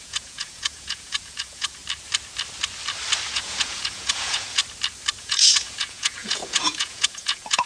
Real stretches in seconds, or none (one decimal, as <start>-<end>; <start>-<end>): 1.8-3.3; 4.6-5.2